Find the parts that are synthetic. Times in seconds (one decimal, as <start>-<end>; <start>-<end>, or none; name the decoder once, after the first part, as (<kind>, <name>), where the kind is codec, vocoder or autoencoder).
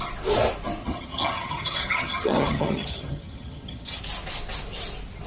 0.8-4.0 (vocoder, HiFi-GAN)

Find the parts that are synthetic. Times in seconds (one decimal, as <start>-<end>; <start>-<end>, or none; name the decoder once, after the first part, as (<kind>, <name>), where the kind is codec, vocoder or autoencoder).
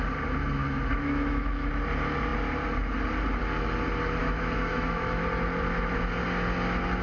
0.6-1.7 (autoencoder, DAC-VAE); 4.2-5.2